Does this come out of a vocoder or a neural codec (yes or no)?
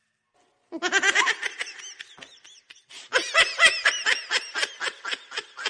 no